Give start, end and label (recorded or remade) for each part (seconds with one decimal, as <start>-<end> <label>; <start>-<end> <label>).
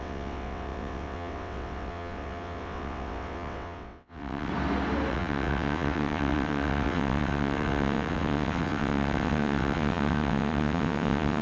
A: 0.0-4.5 remade; 4.5-5.1 recorded; 5.1-11.4 remade